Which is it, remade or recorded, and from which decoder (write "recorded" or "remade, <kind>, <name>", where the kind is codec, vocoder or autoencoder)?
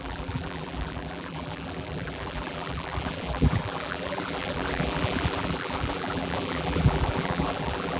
remade, vocoder, BigVGAN v2